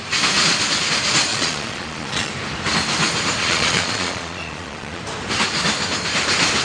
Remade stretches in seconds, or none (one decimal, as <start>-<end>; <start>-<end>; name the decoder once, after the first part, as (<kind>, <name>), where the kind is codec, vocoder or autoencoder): 1.3-2.3 (vocoder, Vocos); 3.4-5.0